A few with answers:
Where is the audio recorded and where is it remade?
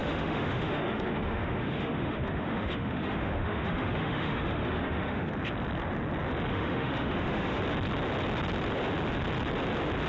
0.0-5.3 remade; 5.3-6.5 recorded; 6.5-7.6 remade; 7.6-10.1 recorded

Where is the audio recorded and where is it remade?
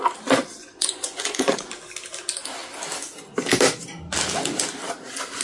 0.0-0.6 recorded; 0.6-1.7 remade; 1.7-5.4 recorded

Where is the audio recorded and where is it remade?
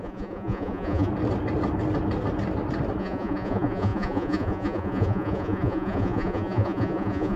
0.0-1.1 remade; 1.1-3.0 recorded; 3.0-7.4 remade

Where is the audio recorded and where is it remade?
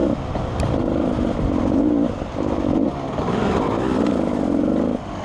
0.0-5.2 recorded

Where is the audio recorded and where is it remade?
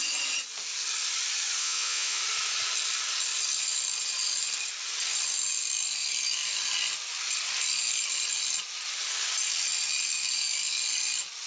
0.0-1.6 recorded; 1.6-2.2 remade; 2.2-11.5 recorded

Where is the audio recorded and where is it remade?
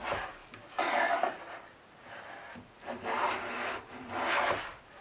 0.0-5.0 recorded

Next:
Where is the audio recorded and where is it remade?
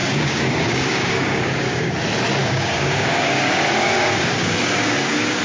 0.0-1.9 remade; 1.9-2.4 recorded; 2.4-5.4 remade